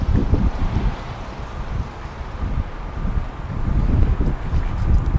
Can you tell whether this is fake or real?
real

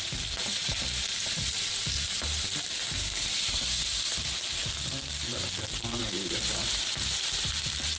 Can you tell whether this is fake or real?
fake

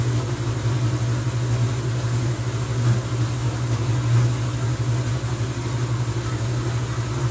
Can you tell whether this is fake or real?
real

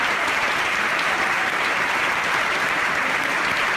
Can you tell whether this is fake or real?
fake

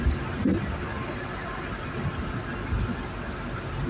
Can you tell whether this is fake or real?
real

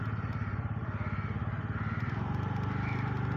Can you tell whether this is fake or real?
real